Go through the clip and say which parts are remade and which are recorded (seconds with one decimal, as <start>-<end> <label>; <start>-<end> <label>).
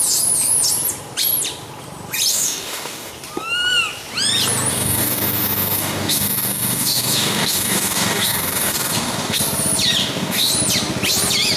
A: 0.0-2.3 recorded; 2.3-3.1 remade; 3.1-4.7 recorded; 4.7-9.4 remade; 9.4-10.0 recorded; 10.0-10.5 remade; 10.5-11.6 recorded